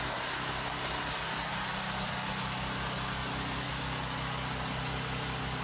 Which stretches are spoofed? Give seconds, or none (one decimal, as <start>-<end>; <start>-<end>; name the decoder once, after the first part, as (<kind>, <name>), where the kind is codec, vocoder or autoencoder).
none

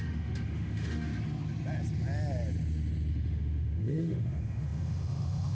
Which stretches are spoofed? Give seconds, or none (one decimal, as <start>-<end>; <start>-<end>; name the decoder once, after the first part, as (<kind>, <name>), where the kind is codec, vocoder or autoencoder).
0.0-1.1 (autoencoder, DAC-VAE); 3.1-5.5

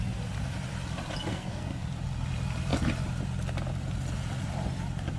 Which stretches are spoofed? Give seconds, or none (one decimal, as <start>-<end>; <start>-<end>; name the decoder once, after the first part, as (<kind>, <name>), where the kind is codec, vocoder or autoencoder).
1.3-1.8 (codec, SNAC)

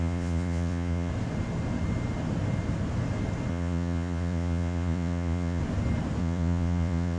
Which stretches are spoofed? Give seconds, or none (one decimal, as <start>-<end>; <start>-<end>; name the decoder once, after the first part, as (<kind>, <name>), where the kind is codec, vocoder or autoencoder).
0.0-1.1 (vocoder, Vocos); 3.5-5.6; 6.2-7.2

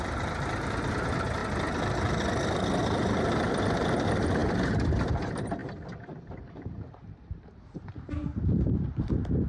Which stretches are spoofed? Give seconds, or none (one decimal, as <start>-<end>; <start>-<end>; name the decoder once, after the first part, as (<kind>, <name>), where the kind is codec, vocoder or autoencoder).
0.0-1.4 (vocoder, BigVGAN v2); 2.8-9.5

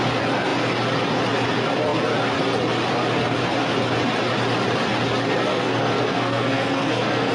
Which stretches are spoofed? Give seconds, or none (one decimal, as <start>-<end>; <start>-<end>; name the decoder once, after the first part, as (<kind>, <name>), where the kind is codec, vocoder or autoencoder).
5.5-7.3 (codec, SNAC)